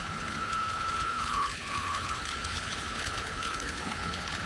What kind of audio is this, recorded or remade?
remade